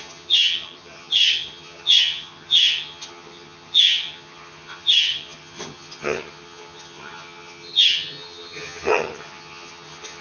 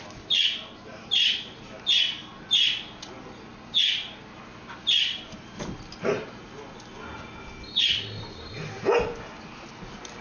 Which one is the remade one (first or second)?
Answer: first